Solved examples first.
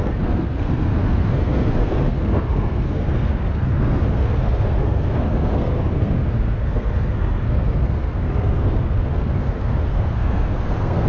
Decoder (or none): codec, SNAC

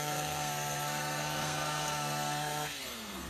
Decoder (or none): codec, SNAC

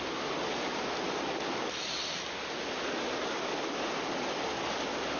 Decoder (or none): none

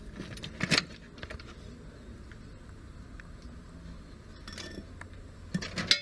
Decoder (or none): none